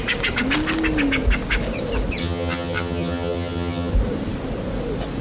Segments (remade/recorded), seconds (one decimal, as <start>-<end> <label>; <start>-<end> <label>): 0.0-2.2 recorded; 2.2-3.9 remade; 3.9-5.2 recorded